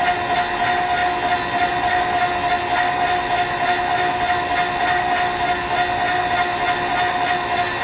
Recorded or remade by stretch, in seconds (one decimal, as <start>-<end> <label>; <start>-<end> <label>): 0.0-7.8 recorded